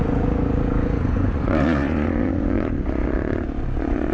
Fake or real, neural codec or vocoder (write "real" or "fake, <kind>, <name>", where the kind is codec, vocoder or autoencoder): fake, vocoder, Vocos